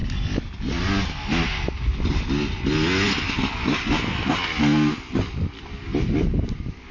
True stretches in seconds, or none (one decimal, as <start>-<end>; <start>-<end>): 0.0-6.9

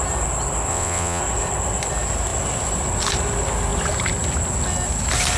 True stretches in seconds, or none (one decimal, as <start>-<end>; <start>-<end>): 0.0-0.7; 1.2-5.4